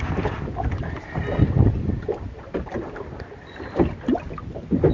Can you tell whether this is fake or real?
real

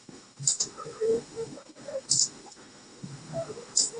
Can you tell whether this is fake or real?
fake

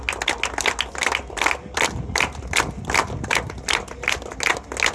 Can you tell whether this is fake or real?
real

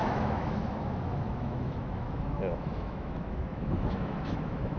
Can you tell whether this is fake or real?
fake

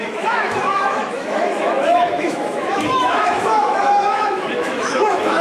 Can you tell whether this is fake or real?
fake